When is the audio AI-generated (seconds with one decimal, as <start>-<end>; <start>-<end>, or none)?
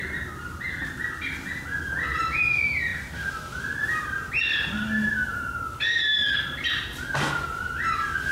none